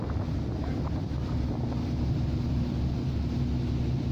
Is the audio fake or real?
real